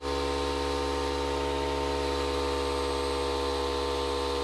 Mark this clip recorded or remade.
recorded